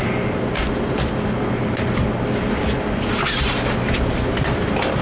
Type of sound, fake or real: real